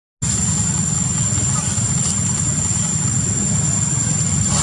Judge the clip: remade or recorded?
recorded